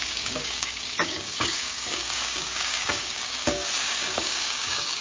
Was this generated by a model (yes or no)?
yes